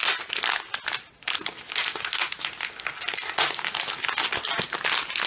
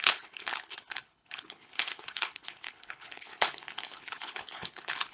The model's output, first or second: second